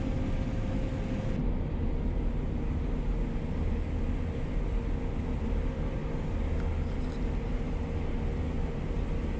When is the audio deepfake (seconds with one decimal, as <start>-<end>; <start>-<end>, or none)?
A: none

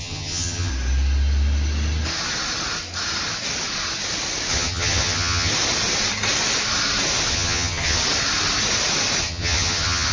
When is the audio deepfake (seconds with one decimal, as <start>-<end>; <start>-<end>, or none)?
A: 0.0-0.7; 4.5-5.5; 7.3-8.0; 9.2-10.1

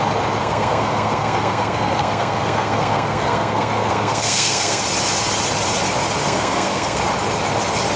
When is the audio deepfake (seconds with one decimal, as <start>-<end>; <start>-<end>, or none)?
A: 0.4-4.8; 6.2-7.0

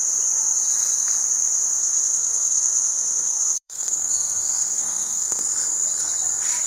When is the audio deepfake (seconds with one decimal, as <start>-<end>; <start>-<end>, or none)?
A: 1.8-5.4

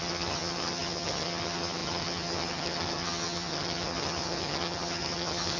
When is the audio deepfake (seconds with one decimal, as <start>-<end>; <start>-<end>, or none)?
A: 0.0-5.6

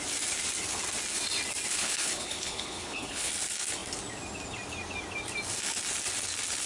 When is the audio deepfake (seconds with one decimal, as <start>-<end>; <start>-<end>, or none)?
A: 1.7-3.3